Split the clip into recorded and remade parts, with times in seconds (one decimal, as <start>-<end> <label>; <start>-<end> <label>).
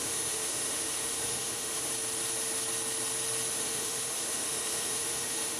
0.0-1.9 remade; 1.9-3.5 recorded; 3.5-5.6 remade